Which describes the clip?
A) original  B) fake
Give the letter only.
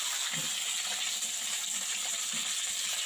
A